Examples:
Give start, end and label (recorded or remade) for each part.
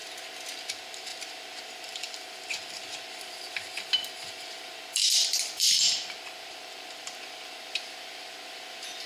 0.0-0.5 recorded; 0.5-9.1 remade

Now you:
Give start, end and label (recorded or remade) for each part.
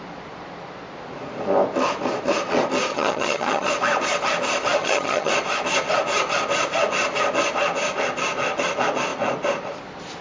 0.0-2.9 recorded; 2.9-3.7 remade; 3.7-4.8 recorded; 4.8-5.3 remade; 5.3-10.2 recorded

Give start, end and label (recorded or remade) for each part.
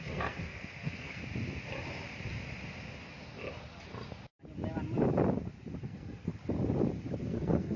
0.0-1.2 remade; 1.2-5.8 recorded; 5.8-6.3 remade; 6.3-7.2 recorded; 7.2-7.8 remade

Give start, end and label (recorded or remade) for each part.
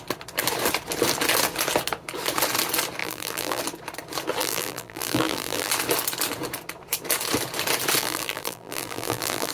0.0-3.0 recorded; 3.0-3.6 remade; 3.6-4.4 recorded; 4.4-5.7 remade; 5.7-8.0 recorded; 8.0-9.5 remade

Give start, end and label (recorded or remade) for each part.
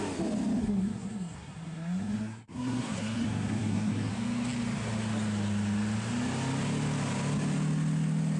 0.0-0.6 recorded; 0.6-4.1 remade; 4.1-8.4 recorded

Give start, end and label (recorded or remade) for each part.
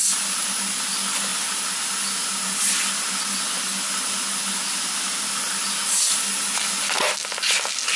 0.0-8.0 recorded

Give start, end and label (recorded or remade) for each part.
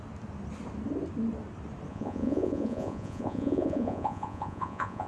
0.0-1.9 recorded; 1.9-5.1 remade